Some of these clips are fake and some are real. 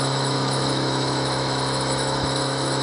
fake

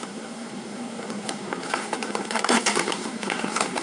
fake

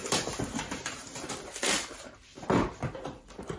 fake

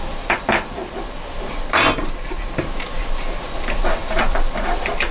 fake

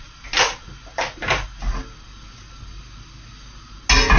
real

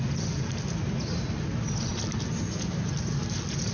real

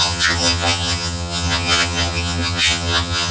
fake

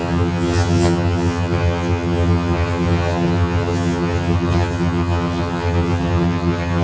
fake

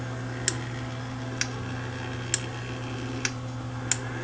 real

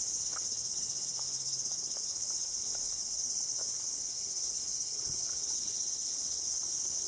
fake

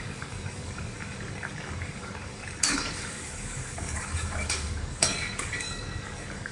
fake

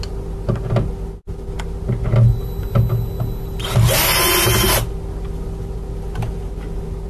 real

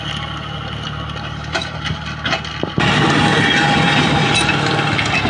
real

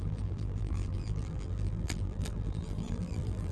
fake